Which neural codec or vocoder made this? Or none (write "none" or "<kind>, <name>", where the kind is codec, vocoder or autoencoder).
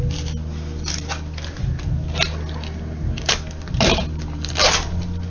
none